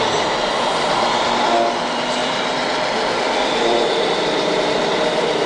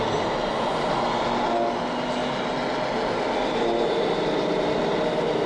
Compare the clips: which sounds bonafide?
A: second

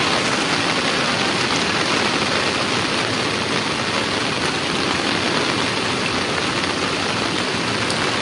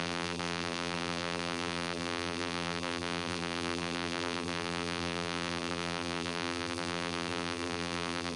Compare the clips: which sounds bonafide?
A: first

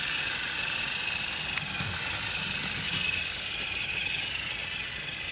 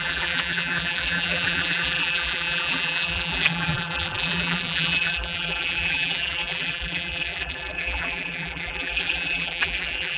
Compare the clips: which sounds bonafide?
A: first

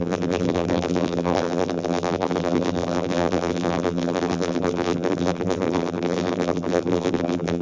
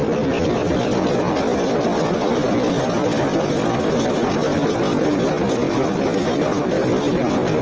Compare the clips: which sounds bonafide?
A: second